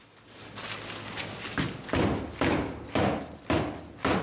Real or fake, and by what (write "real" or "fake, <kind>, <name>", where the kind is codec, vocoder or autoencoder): real